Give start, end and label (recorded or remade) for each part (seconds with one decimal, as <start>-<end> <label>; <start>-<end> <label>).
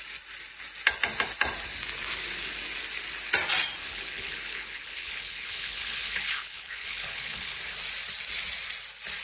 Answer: 0.0-3.8 recorded; 3.8-7.6 remade; 7.6-9.2 recorded